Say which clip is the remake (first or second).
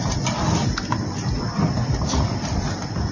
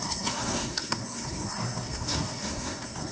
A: second